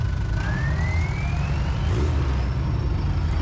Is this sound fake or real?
real